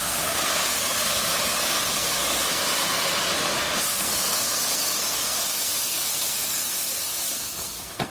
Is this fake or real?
fake